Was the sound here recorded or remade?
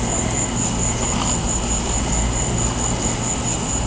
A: recorded